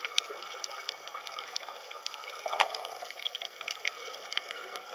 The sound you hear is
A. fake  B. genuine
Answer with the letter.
A